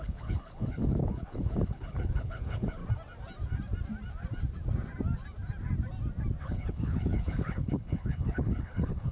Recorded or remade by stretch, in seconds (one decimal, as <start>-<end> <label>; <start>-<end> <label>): 0.0-2.8 remade; 2.8-6.4 recorded; 6.4-9.1 remade